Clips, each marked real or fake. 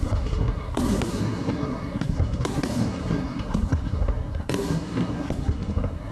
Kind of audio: fake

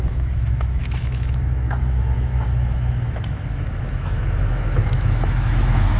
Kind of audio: fake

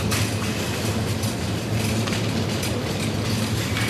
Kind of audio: real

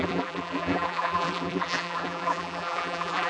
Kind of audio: fake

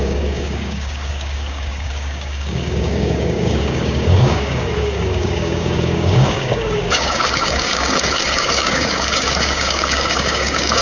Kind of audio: fake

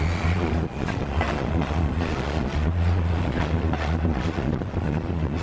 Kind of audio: fake